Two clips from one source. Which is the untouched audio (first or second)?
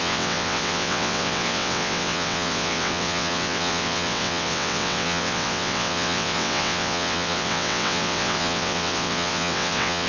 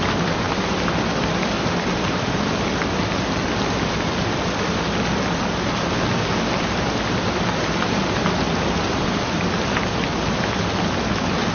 second